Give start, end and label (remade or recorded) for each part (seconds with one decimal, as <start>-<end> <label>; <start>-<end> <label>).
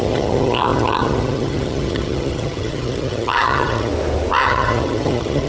0.0-3.9 remade; 3.9-4.4 recorded; 4.4-5.5 remade